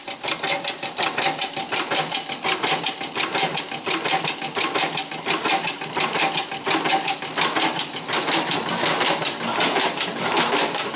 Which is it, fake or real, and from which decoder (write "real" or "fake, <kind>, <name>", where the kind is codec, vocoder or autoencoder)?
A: real